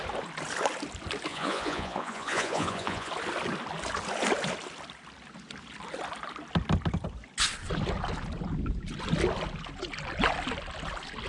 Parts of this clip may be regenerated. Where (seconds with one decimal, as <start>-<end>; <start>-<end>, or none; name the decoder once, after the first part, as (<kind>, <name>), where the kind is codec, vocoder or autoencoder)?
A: 1.3-3.1 (vocoder, Vocos)